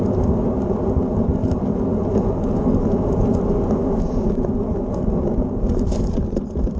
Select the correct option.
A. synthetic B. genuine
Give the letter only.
B